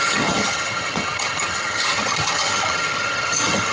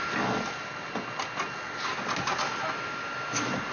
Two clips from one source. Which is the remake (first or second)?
first